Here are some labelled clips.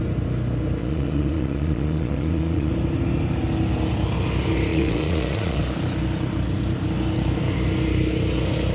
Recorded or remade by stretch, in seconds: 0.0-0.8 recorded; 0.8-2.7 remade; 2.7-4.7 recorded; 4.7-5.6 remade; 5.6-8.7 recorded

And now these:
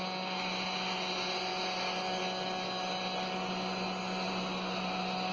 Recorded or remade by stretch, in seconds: 0.0-5.3 recorded